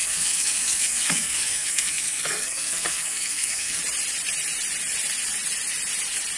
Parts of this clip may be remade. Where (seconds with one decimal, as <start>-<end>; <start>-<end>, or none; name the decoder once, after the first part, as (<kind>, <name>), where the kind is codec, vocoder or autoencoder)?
0.0-3.8 (codec, SNAC)